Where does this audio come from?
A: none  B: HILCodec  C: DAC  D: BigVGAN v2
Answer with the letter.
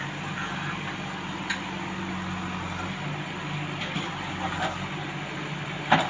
A